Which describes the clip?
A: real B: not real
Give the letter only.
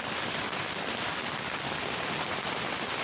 A